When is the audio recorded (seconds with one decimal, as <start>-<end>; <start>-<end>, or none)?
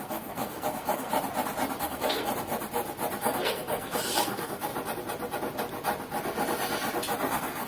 1.1-1.8; 2.3-3.2; 4.7-7.3